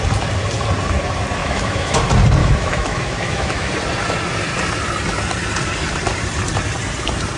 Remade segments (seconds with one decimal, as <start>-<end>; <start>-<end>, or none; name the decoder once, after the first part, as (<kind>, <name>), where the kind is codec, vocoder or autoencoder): 1.4-2.0 (autoencoder, DAC-VAE); 2.4-3.7

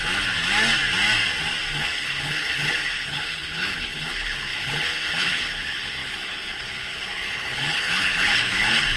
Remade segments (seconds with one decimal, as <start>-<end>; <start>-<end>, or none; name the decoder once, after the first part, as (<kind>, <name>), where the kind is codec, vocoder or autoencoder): 1.8-9.0 (codec, HILCodec)

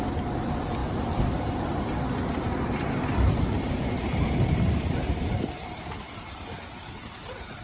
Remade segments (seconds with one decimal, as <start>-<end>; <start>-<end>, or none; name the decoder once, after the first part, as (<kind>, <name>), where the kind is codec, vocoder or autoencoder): 0.8-5.4 (vocoder, BigVGAN v2)

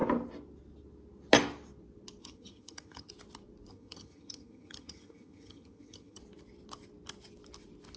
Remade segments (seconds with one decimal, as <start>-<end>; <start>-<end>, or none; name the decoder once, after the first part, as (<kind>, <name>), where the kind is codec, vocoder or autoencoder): 2.2-3.1 (vocoder, HiFi-GAN); 3.7-6.2

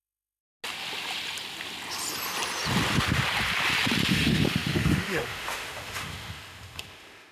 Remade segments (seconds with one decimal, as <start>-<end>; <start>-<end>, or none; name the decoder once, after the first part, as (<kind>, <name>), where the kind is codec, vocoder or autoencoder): 0.0-0.4 (autoencoder, DAC-VAE); 4.1-7.3

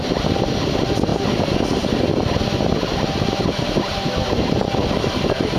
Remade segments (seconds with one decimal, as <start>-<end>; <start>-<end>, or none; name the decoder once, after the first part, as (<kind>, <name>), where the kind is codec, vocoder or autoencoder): 0.0-5.6 (vocoder, BigVGAN v2)